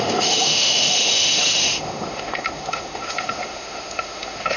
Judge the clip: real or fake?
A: fake